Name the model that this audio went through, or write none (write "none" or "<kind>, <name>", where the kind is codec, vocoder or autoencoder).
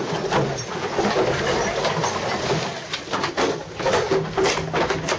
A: none